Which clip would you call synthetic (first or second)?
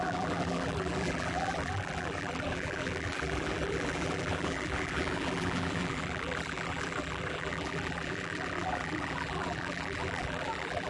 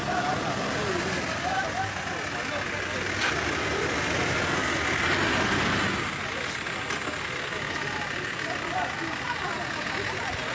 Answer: first